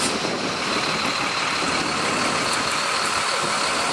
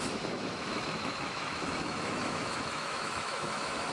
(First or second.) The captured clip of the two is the first